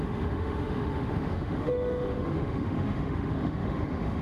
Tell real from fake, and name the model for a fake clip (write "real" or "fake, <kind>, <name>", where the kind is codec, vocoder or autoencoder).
fake, autoencoder, DAC-VAE